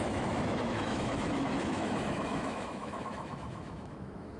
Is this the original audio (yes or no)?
no